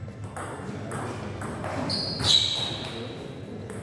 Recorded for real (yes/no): yes